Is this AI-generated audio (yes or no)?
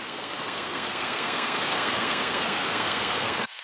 yes